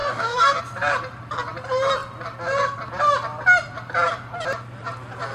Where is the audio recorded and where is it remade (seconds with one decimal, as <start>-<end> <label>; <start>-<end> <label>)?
0.0-0.6 remade; 0.6-5.3 recorded